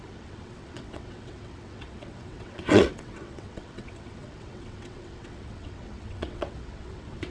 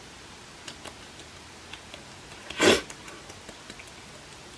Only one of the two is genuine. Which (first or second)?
second